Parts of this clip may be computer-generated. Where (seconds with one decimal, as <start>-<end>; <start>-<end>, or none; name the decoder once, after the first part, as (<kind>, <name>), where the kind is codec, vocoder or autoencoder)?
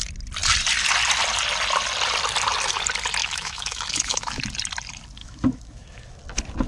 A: 3.2-4.4 (autoencoder, DAC-VAE); 5.2-6.2